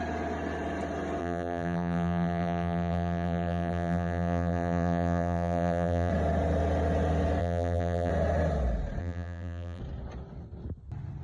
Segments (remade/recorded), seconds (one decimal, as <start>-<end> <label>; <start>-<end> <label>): 0.0-1.2 recorded; 1.2-6.1 remade; 6.1-7.4 recorded; 7.4-8.1 remade; 8.1-9.0 recorded; 9.0-9.8 remade; 9.8-11.2 recorded